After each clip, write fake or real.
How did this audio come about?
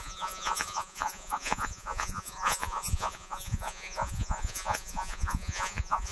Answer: fake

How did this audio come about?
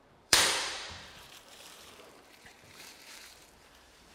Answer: fake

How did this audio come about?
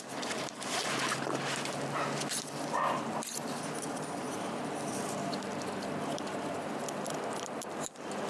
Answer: fake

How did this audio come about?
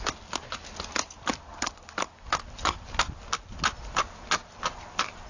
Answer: real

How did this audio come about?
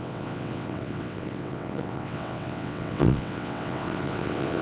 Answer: fake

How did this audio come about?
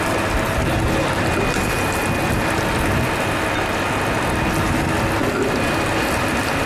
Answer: real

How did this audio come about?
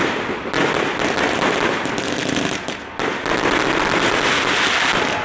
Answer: real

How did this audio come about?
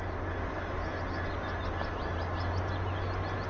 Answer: real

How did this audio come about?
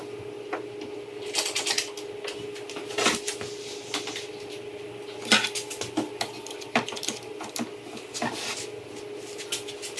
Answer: real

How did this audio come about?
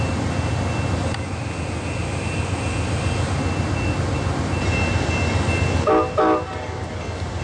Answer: real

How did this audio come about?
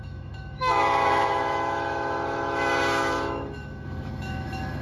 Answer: fake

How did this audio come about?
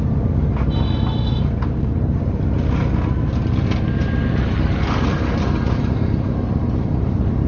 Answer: real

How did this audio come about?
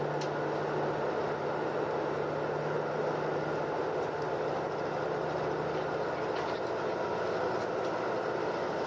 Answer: real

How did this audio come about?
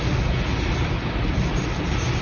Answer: real